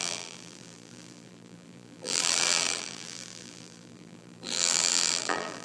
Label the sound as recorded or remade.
remade